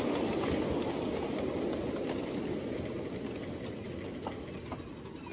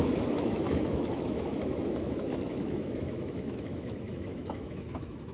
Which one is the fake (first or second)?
second